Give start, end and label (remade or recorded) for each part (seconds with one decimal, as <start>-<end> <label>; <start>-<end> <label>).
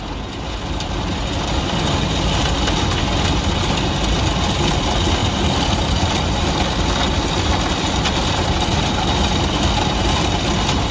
0.0-5.2 recorded; 5.2-6.5 remade; 6.5-10.9 recorded